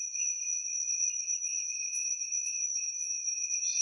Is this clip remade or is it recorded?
remade